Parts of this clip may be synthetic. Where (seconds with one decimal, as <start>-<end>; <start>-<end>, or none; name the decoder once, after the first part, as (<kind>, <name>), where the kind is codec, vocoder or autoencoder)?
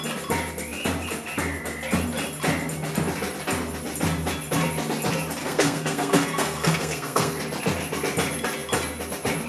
5.4-7.4 (codec, SNAC)